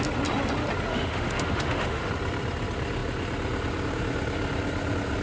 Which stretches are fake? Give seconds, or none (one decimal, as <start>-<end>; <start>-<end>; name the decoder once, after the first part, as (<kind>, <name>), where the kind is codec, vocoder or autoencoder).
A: 0.9-2.1 (autoencoder, DAC-VAE)